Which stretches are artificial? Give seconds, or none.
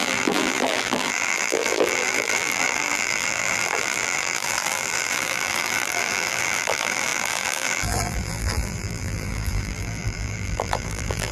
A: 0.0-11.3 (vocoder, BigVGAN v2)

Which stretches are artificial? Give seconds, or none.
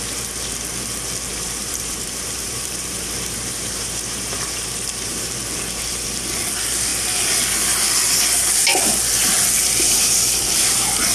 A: 1.3-5.3 (vocoder, BigVGAN v2)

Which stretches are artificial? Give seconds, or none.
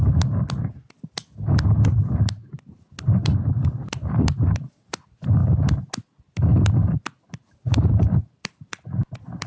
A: 2.4-4.7 (vocoder, BigVGAN v2); 6.5-9.1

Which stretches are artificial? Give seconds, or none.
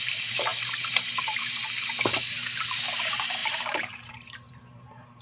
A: 0.0-1.6 (vocoder, BigVGAN v2); 2.3-5.2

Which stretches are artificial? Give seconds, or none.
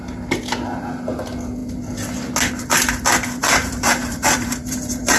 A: 3.4-5.2 (vocoder, BigVGAN v2)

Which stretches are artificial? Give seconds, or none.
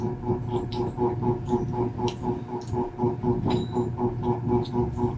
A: none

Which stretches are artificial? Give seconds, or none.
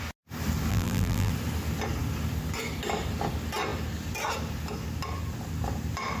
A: 0.7-1.3 (vocoder, BigVGAN v2)